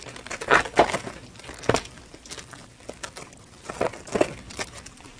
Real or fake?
real